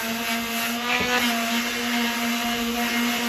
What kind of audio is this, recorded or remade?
recorded